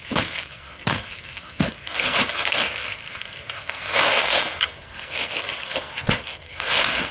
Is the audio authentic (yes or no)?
no